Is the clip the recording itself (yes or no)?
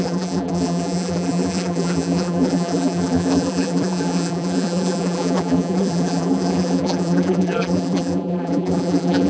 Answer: no